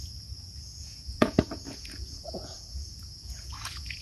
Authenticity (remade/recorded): remade